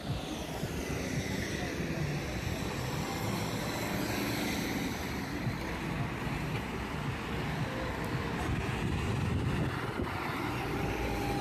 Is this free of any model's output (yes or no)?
yes